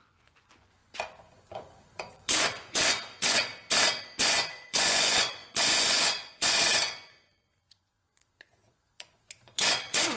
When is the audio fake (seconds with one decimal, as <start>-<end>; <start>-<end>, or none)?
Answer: 0.0-3.5; 4.2-10.2